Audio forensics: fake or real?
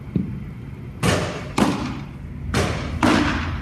real